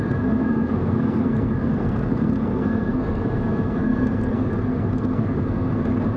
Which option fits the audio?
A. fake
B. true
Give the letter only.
A